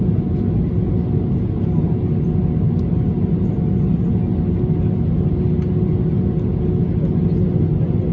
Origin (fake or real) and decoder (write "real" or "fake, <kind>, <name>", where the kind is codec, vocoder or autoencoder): real